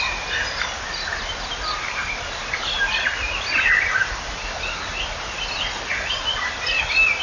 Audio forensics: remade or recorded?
recorded